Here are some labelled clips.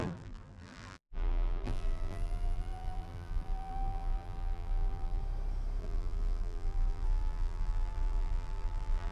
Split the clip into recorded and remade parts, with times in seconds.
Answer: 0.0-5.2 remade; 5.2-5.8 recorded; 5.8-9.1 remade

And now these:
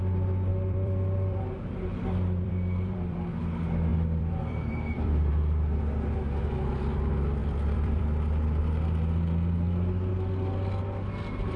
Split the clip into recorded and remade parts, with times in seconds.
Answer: 0.0-0.5 recorded; 0.5-3.4 remade; 3.4-3.9 recorded; 3.9-5.3 remade; 5.3-7.4 recorded; 7.4-8.6 remade; 8.6-11.6 recorded

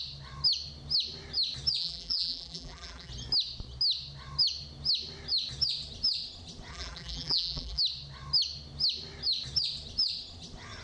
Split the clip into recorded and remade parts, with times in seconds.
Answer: 0.0-1.8 recorded; 1.8-3.1 remade; 3.1-6.7 recorded; 6.7-7.8 remade; 7.8-10.8 recorded

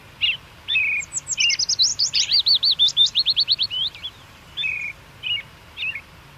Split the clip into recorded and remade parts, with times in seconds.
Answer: 0.0-1.9 recorded; 1.9-5.0 remade; 5.0-6.4 recorded

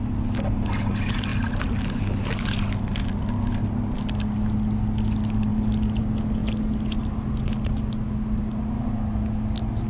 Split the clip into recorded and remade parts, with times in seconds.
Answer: 0.0-9.9 recorded

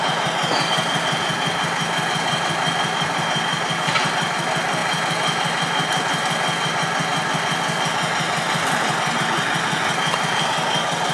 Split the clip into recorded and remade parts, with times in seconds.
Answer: 0.0-11.1 recorded

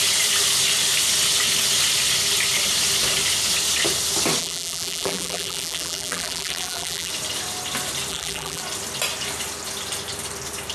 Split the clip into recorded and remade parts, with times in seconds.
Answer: 0.0-4.4 recorded; 4.4-7.1 remade; 7.1-8.1 recorded; 8.1-8.6 remade; 8.6-10.7 recorded

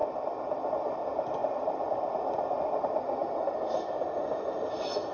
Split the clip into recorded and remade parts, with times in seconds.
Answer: 0.0-5.1 recorded